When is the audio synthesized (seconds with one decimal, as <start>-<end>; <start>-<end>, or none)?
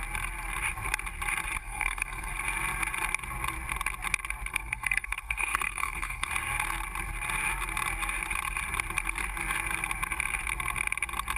1.6-2.3; 4.5-6.3